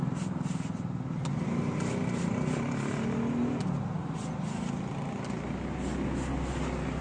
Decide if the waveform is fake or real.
real